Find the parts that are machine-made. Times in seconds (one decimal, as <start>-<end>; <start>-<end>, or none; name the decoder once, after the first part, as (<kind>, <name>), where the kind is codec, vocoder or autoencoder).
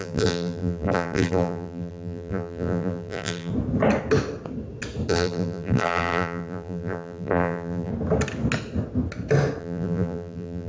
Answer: 0.0-3.5 (vocoder, BigVGAN v2); 5.1-7.9; 9.6-10.7